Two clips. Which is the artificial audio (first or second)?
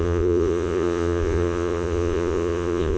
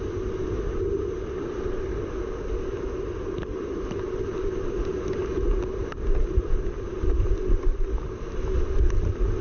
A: first